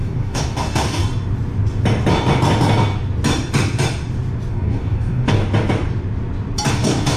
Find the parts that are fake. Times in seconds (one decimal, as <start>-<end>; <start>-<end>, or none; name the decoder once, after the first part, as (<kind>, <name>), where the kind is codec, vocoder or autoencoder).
0.0-1.0 (codec, DAC); 4.5-5.4; 6.7-7.2